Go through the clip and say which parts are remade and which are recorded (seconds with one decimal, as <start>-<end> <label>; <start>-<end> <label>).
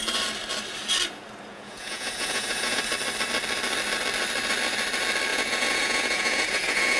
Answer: 0.0-1.5 recorded; 1.5-2.8 remade; 2.8-5.3 recorded; 5.3-7.0 remade